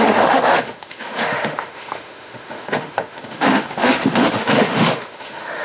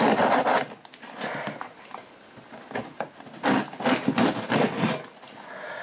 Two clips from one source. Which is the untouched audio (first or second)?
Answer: second